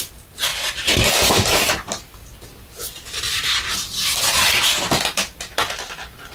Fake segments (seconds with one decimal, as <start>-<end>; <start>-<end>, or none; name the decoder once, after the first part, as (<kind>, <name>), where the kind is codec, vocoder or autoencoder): 0.5-2.0 (vocoder, BigVGAN v2); 2.5-6.3